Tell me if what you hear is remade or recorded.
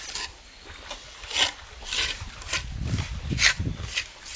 remade